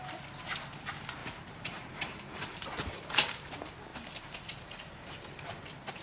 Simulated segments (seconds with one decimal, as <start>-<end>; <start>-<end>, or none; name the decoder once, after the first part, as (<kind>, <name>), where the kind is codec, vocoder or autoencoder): 1.2-3.5 (vocoder, BigVGAN v2); 3.9-4.8